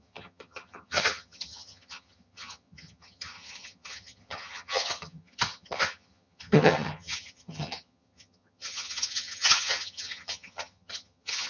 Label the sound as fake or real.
fake